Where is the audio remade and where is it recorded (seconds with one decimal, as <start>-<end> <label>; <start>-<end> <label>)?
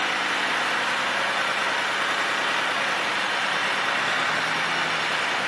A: 0.0-5.5 recorded